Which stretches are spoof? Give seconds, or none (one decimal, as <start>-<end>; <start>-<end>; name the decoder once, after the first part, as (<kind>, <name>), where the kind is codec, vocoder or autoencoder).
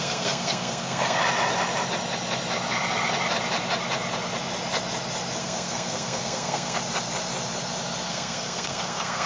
0.0-1.2 (codec, SNAC); 5.4-6.8; 8.1-9.3